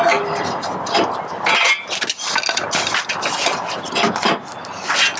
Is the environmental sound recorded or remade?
recorded